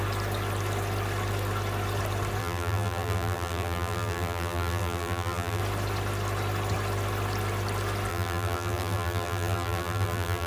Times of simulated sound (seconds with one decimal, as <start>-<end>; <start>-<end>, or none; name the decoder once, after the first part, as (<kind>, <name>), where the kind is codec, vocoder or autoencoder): 2.4-5.6 (vocoder, BigVGAN v2); 8.1-10.5